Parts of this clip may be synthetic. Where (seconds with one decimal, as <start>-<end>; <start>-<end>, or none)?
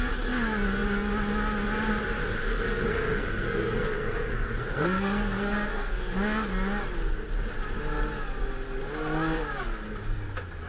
2.4-6.0